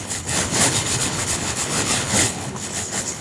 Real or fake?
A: fake